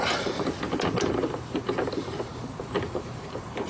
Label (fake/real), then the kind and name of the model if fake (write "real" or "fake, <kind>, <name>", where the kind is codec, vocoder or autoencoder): fake, vocoder, BigVGAN v2